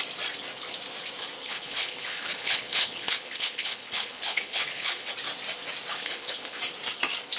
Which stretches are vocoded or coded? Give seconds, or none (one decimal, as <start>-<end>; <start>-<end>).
1.4-5.1; 5.9-6.6